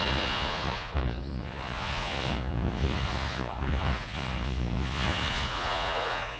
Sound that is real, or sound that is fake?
fake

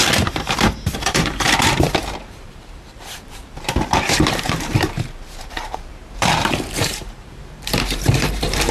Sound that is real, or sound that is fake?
fake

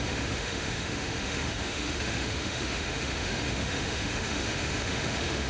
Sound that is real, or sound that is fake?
fake